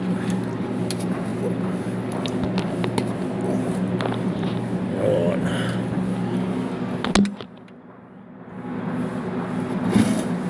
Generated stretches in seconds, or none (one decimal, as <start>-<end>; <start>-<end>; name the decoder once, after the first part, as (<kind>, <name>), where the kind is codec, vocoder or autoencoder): none